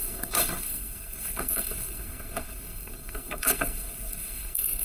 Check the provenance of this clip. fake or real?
fake